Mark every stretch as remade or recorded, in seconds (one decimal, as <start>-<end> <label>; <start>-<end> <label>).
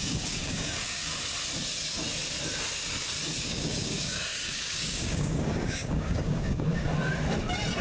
0.0-1.1 remade; 1.1-3.4 recorded; 3.4-6.9 remade; 6.9-7.8 recorded